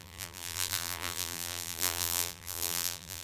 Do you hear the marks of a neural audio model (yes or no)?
yes